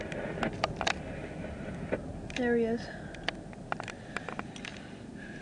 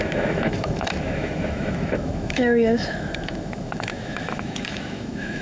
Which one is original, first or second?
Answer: first